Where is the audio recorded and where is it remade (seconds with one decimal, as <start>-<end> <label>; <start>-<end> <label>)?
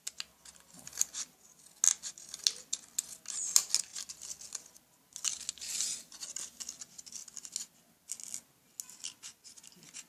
0.0-10.1 recorded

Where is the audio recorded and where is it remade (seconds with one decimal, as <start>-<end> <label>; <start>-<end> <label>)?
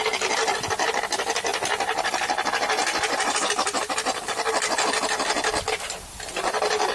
0.0-6.9 recorded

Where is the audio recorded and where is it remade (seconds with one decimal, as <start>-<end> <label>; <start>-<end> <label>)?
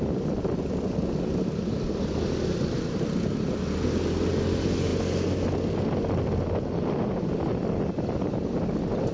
0.0-9.1 recorded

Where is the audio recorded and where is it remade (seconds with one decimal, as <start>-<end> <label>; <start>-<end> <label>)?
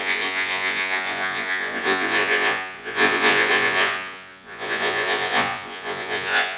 0.0-6.6 remade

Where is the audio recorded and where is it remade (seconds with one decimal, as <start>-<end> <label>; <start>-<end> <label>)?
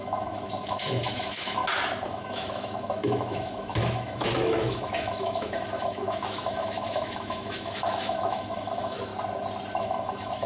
0.0-1.6 remade; 1.6-2.1 recorded; 2.1-9.1 remade; 9.1-9.8 recorded; 9.8-10.5 remade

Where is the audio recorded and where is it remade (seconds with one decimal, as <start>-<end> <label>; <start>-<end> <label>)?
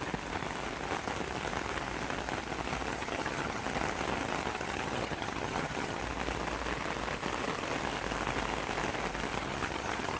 0.0-2.9 recorded; 2.9-3.6 remade; 3.6-4.5 recorded; 4.5-6.0 remade; 6.0-9.4 recorded; 9.4-10.2 remade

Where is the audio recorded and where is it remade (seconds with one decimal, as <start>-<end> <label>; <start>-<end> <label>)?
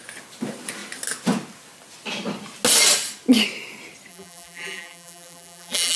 0.0-4.1 recorded; 4.1-6.0 remade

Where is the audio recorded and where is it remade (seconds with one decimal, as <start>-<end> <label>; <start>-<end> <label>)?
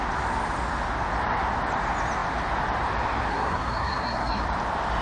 0.0-3.3 recorded; 3.3-4.4 remade; 4.4-5.0 recorded